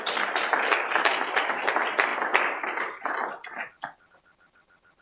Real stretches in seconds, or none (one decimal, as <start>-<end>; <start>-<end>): 0.0-5.0